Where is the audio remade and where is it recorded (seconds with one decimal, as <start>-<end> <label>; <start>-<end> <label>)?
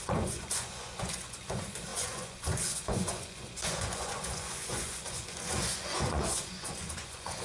0.0-7.4 remade